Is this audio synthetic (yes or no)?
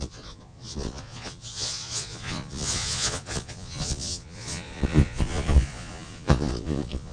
yes